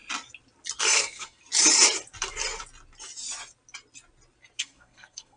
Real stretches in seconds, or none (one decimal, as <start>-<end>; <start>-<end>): 0.0-0.8; 1.4-4.6